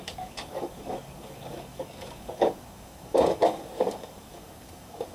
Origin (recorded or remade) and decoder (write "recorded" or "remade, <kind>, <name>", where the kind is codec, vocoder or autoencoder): remade, codec, DAC